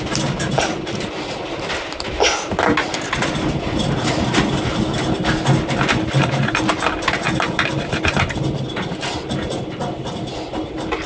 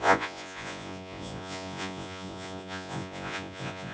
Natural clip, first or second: first